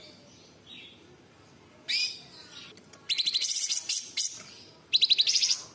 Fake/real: real